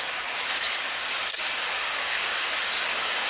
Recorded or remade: remade